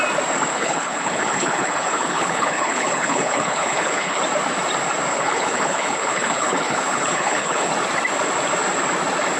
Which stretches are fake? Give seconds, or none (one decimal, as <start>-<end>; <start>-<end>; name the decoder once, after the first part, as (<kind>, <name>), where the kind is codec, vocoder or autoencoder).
0.5-4.2 (codec, HILCodec); 5.1-7.7